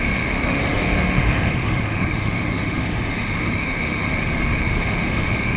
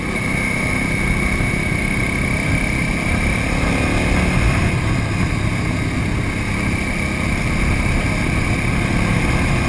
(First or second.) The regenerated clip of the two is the first